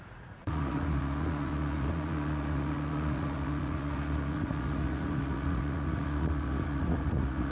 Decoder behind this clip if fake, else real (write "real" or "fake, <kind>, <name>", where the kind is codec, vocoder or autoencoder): fake, vocoder, Vocos